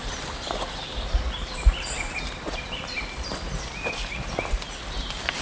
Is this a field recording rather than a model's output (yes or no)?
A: yes